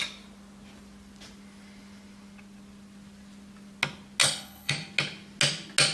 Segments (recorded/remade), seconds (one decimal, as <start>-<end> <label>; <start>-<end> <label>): 0.0-4.2 recorded; 4.2-4.7 remade; 4.7-5.9 recorded